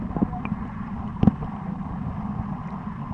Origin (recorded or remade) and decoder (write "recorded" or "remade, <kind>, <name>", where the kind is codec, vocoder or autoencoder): recorded